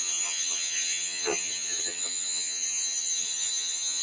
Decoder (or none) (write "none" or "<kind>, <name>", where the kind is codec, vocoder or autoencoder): vocoder, HiFi-GAN